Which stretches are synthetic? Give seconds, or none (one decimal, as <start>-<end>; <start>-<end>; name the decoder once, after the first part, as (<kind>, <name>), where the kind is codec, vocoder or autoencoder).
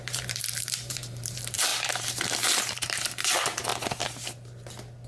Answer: 0.0-3.7 (vocoder, BigVGAN v2)